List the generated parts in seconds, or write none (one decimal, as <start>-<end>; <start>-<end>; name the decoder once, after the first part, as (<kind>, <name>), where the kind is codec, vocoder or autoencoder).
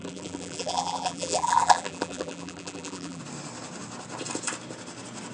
0.0-3.2 (vocoder, BigVGAN v2)